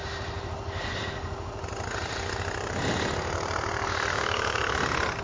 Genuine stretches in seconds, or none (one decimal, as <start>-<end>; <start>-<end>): 0.0-4.1; 4.6-5.2